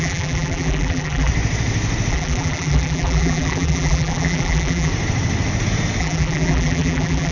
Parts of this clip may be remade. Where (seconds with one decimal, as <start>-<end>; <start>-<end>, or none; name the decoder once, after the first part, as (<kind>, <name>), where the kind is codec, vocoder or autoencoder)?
0.0-1.3 (vocoder, BigVGAN v2); 2.1-4.9; 6.0-7.3

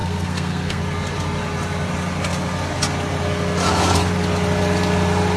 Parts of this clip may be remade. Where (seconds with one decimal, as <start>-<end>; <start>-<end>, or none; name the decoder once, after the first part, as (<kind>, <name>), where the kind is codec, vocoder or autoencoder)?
0.0-0.8 (codec, SNAC)

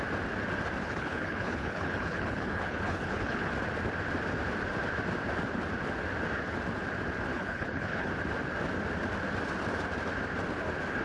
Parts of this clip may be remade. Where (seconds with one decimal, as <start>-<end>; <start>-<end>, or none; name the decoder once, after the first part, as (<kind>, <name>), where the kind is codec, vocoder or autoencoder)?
0.8-3.5 (codec, HILCodec); 7.3-8.1

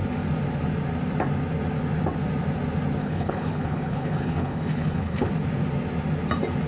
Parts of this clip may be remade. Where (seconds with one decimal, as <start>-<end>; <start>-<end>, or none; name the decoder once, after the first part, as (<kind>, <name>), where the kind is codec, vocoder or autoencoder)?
3.0-5.3 (codec, HILCodec)

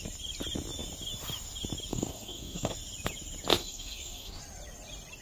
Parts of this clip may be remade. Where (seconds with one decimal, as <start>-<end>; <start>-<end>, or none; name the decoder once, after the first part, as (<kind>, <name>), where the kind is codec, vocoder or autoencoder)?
1.9-2.7 (codec, DAC); 3.6-4.4

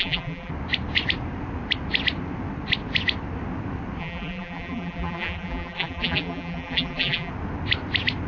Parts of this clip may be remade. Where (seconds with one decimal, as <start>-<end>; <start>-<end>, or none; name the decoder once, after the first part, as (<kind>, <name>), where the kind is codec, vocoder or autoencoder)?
0.0-0.5 (vocoder, BigVGAN v2); 4.0-7.3

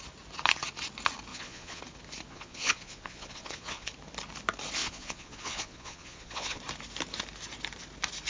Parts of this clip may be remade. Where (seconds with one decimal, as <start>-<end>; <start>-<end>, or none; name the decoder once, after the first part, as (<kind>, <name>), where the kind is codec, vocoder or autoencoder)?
1.3-1.8 (vocoder, Vocos); 2.3-3.9; 4.8-6.6

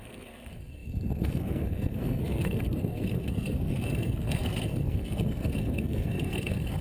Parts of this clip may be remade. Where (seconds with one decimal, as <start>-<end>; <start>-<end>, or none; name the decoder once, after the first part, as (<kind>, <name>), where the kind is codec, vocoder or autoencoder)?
0.0-6.8 (codec, SNAC)